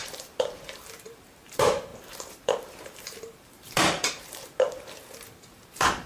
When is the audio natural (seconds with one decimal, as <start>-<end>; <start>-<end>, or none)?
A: none